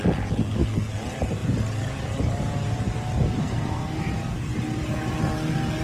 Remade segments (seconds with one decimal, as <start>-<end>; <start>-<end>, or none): 0.4-0.9; 3.4-4.0